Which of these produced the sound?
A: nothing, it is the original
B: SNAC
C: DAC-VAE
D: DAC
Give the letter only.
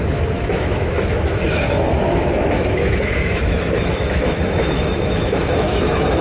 C